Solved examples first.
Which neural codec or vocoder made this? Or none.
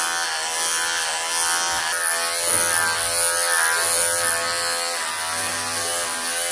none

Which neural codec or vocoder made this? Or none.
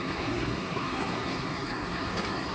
codec, SNAC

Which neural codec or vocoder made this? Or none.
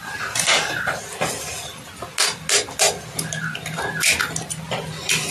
none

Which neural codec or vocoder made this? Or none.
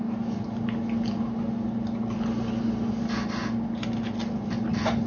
none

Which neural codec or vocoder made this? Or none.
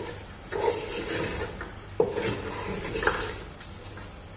none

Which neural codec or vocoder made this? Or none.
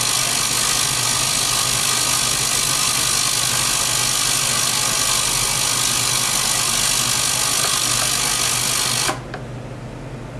none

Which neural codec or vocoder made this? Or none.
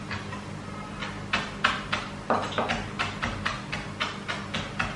none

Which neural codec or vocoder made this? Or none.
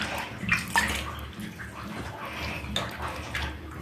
none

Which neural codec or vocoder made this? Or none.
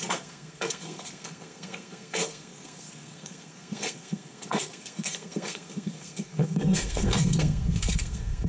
codec, SNAC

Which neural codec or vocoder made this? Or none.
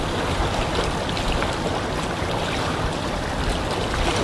none